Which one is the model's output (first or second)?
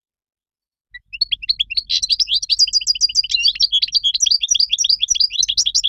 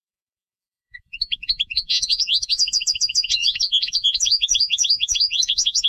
second